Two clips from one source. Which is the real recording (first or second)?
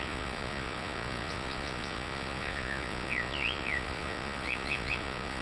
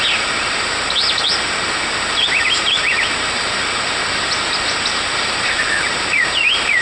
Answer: second